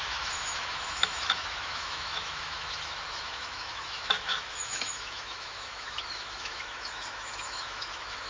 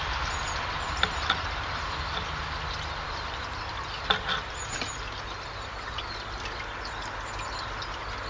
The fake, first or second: first